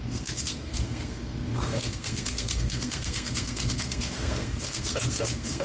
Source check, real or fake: fake